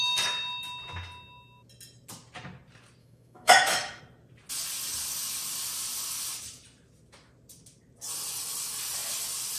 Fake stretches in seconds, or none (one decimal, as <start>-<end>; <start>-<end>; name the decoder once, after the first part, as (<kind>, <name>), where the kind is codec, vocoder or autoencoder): 3.0-4.0 (autoencoder, DAC-VAE)